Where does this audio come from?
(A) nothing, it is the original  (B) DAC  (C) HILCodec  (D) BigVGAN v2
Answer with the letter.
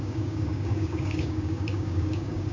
B